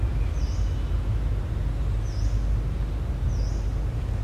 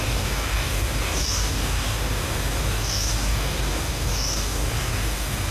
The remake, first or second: second